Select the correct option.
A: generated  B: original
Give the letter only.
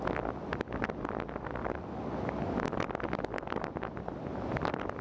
B